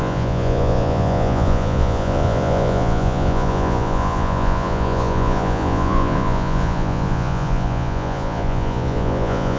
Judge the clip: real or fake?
fake